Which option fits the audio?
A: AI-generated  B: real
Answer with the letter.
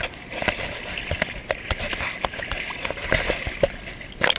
B